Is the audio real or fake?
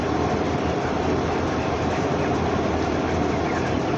real